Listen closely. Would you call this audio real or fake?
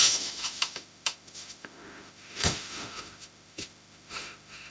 fake